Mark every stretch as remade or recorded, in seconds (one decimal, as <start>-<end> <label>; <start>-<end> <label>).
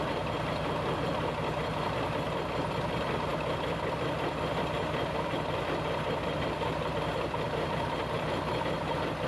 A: 0.0-9.3 recorded